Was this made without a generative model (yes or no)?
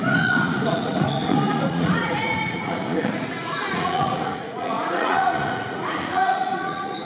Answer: no